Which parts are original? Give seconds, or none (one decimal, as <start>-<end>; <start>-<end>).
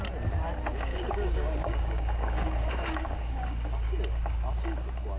0.0-0.9; 4.0-5.2